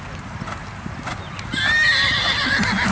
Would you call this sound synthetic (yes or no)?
no